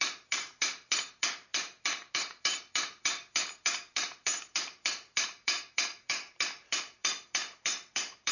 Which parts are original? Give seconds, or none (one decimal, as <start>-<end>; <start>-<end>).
none

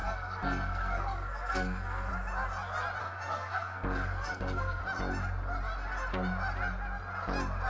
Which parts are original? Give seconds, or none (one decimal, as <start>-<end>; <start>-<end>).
2.1-3.0; 4.8-7.7

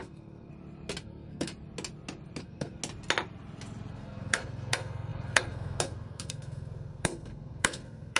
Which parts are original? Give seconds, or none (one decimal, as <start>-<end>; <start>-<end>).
0.5-1.0; 1.5-2.4; 2.8-3.9

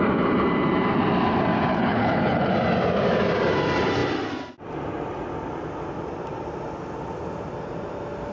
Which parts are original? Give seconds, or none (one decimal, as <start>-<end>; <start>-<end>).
0.0-1.7; 2.5-8.3

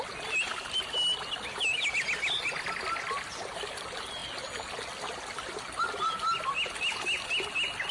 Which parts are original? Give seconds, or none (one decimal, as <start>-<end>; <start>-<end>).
0.0-7.9